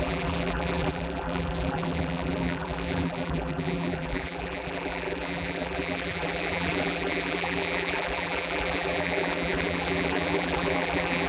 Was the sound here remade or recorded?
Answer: remade